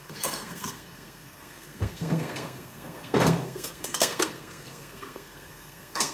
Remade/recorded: remade